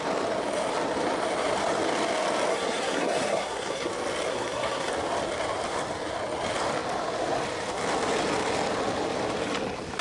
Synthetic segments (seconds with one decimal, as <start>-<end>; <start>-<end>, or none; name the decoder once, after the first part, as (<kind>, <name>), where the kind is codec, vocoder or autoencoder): 2.5-3.9 (codec, SNAC); 4.3-4.9